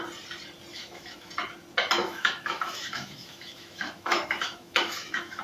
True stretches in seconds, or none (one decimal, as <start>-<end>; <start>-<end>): 0.0-0.7; 1.3-2.0